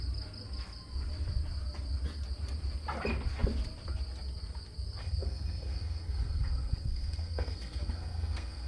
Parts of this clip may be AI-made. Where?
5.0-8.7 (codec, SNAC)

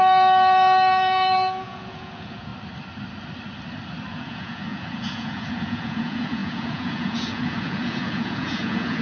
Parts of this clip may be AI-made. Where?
0.0-2.5 (vocoder, Vocos); 4.1-9.0

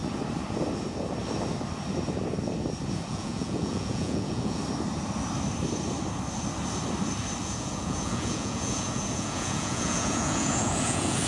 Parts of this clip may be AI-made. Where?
3.1-4.6 (vocoder, Vocos); 7.4-11.3